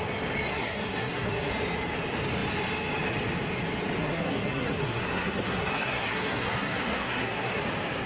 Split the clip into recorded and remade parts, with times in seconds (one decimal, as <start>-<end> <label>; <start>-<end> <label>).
0.0-0.5 recorded; 0.5-1.5 remade; 1.5-4.0 recorded; 4.0-7.6 remade; 7.6-8.1 recorded